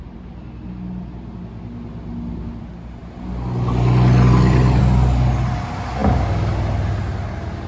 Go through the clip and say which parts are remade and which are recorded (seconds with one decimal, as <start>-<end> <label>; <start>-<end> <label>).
0.0-7.7 recorded